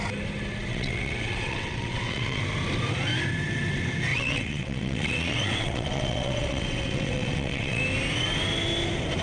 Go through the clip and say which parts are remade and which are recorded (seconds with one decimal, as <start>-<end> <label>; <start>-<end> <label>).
0.0-0.7 recorded; 0.7-2.4 remade; 2.4-4.1 recorded; 4.1-7.8 remade; 7.8-9.2 recorded